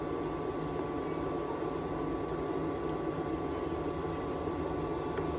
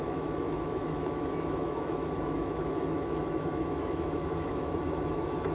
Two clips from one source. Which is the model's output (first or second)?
second